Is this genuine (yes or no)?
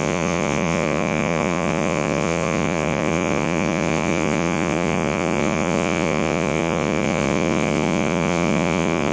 no